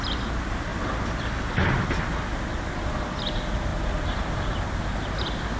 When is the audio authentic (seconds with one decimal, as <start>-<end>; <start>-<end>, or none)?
0.0-3.7; 4.6-5.6